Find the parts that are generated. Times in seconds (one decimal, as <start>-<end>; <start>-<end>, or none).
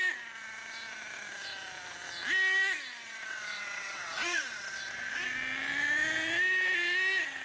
3.0-4.6